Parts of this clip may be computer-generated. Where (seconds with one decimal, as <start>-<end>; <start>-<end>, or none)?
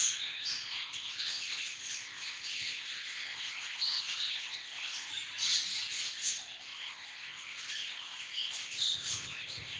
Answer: 0.0-5.1; 5.9-9.8